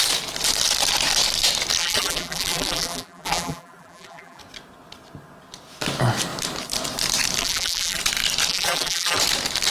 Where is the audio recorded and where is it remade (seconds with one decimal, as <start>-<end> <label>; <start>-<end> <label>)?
0.0-1.8 recorded; 1.8-4.4 remade; 4.4-7.4 recorded; 7.4-8.0 remade; 8.0-8.5 recorded; 8.5-9.2 remade; 9.2-9.7 recorded